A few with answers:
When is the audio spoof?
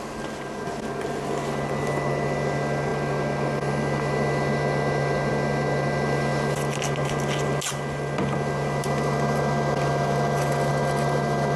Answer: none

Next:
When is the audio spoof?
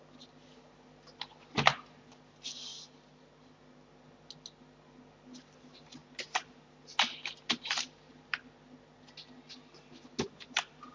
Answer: none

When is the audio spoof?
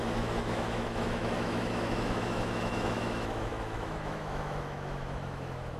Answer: 0.0-5.8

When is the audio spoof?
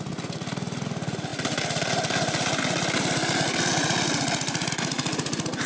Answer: none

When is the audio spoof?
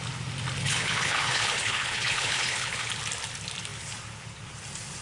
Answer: 0.6-2.9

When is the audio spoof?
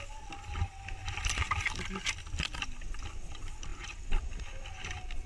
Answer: none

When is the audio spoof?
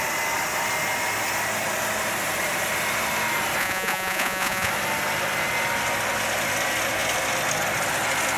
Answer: 3.6-4.7